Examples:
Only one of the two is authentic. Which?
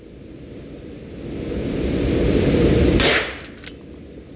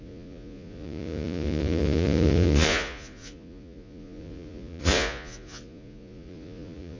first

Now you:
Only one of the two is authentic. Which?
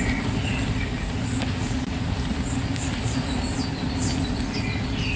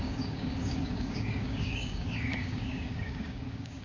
first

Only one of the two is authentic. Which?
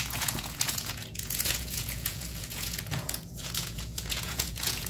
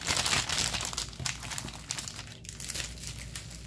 second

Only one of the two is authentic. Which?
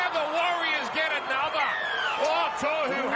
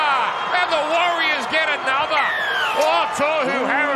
second